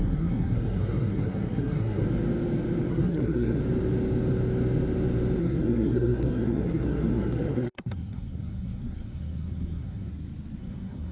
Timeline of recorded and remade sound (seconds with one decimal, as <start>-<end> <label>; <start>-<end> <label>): 0.0-2.0 remade; 2.0-2.9 recorded; 2.9-3.6 remade; 3.6-5.4 recorded; 5.4-10.1 remade; 10.1-10.6 recorded; 10.6-11.1 remade